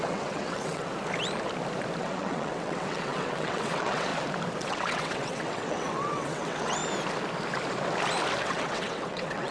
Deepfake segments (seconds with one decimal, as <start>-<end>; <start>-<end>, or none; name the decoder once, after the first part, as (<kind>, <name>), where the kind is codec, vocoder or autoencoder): 0.0-0.9 (vocoder, WaveNeXt); 2.0-4.1; 4.6-6.8; 8.4-9.5